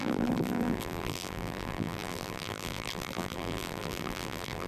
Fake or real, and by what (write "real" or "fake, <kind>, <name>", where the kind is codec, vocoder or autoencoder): fake, vocoder, BigVGAN v2